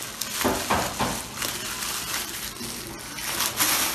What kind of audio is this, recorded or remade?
recorded